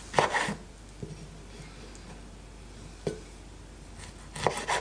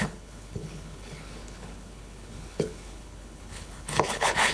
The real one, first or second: first